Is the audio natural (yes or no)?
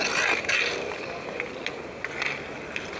yes